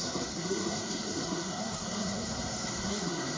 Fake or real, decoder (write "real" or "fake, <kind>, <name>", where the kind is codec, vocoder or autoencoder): fake, codec, SNAC